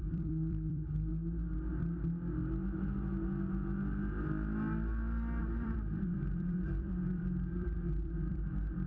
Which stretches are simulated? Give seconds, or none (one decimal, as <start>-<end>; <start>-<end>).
0.0-1.1; 5.4-8.9